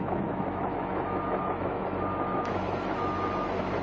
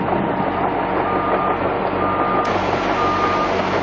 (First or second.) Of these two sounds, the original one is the second